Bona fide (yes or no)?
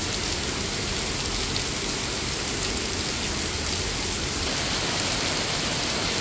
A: yes